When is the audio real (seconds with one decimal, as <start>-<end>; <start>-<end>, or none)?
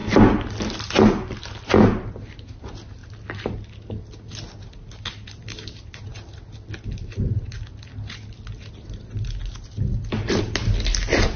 0.0-11.4